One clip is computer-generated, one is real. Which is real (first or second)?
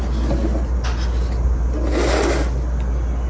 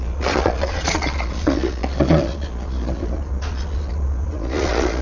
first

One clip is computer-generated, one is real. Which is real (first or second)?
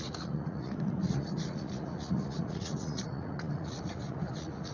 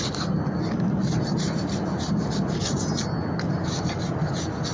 second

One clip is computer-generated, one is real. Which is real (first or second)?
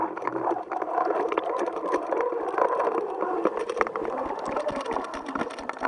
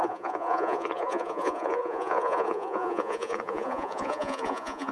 first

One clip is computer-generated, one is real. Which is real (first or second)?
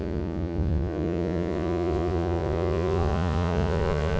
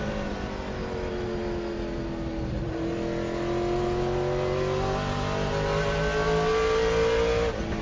second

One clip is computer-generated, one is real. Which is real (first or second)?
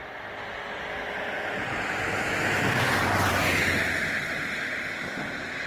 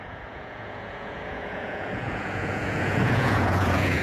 first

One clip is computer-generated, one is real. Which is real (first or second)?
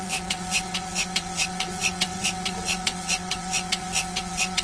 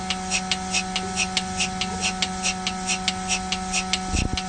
second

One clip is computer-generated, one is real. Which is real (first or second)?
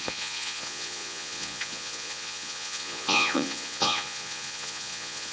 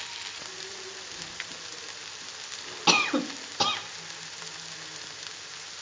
second